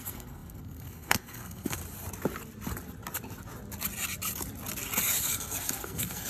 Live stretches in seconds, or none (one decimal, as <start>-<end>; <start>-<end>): 1.8-5.2